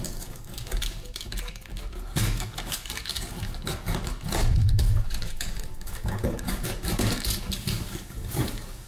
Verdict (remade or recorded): remade